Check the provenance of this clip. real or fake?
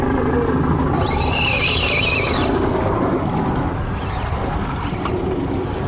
real